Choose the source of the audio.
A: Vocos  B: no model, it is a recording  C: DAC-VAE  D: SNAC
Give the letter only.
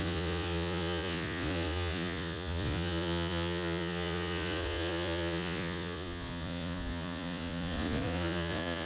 A